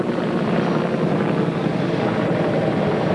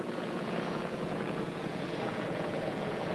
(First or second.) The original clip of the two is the first